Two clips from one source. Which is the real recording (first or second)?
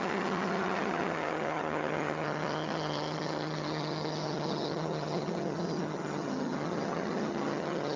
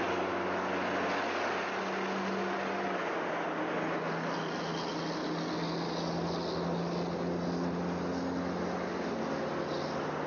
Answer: second